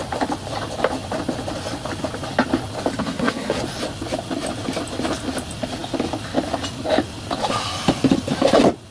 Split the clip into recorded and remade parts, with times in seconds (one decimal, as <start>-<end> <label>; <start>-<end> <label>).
0.0-3.0 recorded; 3.0-3.6 remade; 3.6-8.9 recorded

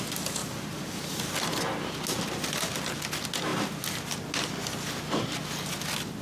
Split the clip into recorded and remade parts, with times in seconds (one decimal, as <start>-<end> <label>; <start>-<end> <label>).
0.0-6.2 recorded